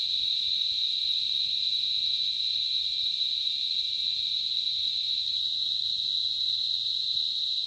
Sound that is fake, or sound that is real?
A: real